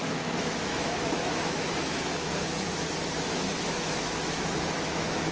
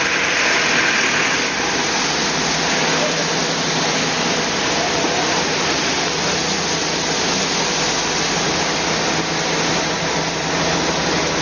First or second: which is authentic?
second